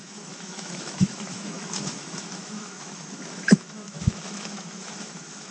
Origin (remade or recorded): remade